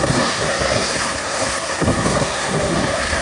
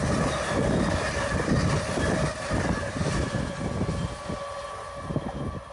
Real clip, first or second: second